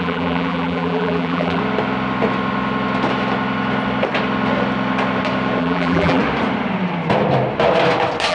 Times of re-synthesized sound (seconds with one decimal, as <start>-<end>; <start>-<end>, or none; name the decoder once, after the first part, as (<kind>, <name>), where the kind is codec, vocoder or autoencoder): 0.0-1.6 (vocoder, BigVGAN v2); 5.6-6.2